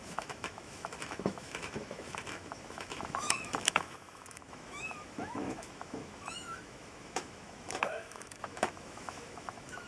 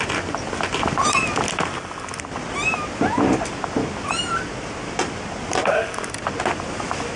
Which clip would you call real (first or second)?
second